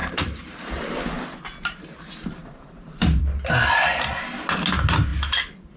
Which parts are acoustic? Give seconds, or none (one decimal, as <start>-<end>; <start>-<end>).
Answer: 0.8-2.4; 3.2-5.8